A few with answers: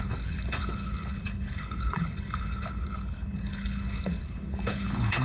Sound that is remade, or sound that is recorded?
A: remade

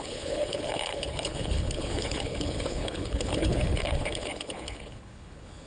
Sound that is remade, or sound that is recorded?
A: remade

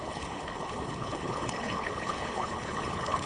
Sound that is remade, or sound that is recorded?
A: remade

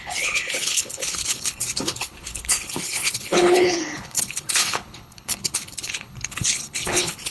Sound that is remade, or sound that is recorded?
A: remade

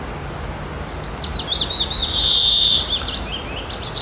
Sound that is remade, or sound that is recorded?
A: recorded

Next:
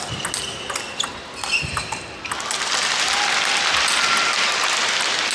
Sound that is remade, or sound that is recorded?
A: recorded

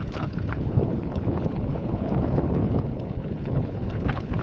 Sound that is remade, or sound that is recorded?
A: remade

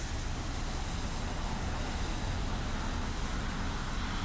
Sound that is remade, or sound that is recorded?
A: recorded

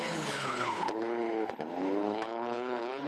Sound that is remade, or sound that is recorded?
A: remade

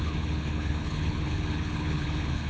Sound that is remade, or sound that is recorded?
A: remade